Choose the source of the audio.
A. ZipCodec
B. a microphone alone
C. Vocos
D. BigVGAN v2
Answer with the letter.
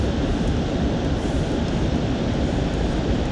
D